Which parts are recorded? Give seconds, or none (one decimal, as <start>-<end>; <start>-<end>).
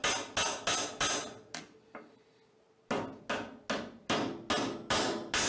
0.0-5.5